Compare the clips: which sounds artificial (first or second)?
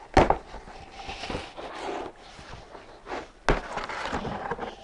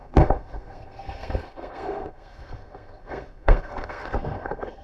second